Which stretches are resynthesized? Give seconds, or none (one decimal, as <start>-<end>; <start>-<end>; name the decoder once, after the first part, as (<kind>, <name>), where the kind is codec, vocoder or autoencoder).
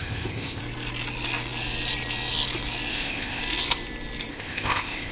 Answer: 0.0-0.6 (codec, ZipCodec); 2.9-3.4; 4.3-5.1